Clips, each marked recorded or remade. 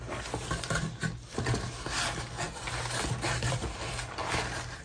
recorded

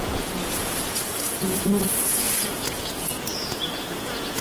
remade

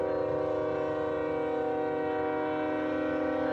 recorded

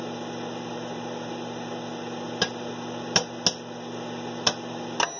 recorded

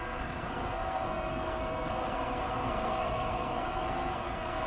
remade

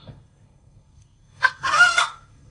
remade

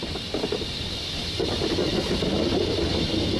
recorded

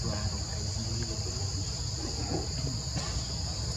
recorded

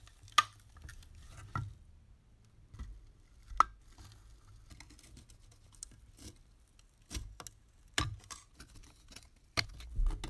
recorded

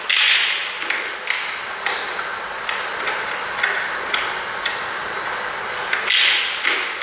recorded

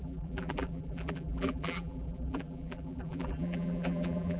remade